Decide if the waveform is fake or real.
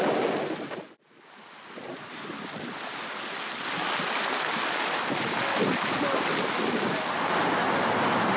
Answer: real